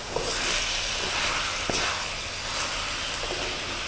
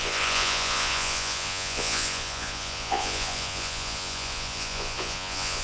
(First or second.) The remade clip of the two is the second